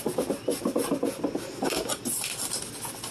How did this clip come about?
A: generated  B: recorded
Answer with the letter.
B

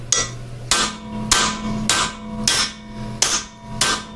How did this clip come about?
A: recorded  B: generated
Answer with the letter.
A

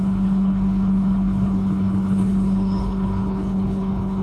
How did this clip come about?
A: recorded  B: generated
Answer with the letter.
B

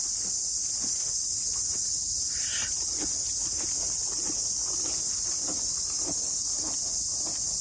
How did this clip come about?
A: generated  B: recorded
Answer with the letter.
B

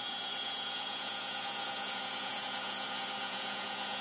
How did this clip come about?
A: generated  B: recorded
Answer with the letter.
A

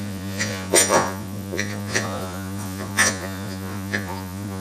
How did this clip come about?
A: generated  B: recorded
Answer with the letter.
A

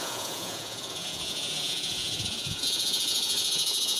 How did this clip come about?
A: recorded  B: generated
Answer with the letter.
B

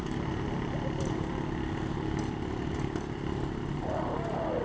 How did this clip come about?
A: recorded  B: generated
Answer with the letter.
A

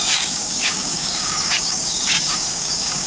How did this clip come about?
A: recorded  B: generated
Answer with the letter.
B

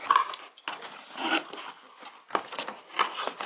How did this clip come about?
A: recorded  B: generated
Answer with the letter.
A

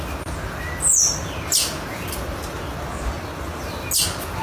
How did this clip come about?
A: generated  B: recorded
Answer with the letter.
B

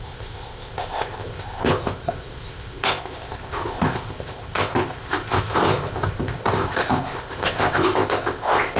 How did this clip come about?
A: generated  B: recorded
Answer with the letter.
A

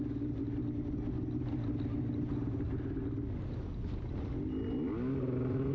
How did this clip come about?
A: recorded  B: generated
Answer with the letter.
A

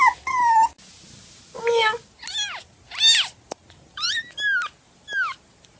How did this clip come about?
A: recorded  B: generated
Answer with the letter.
A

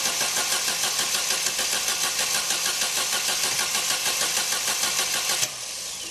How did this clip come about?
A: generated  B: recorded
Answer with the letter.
B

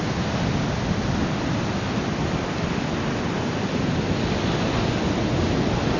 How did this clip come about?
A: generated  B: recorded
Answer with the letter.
B